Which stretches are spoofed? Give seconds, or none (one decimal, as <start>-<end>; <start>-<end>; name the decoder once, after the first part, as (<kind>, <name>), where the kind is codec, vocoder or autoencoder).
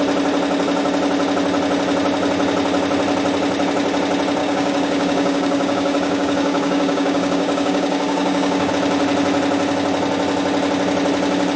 4.4-8.7 (codec, DAC)